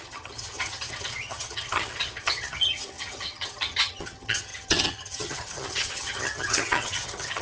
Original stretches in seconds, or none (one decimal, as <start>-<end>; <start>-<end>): none